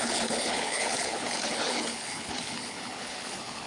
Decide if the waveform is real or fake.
fake